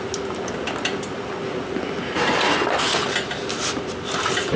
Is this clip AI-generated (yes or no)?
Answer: no